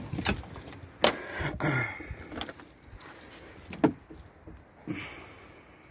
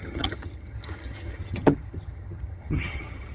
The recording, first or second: first